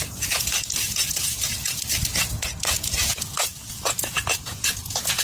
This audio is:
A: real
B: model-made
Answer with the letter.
B